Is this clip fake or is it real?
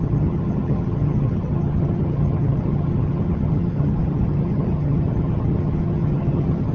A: fake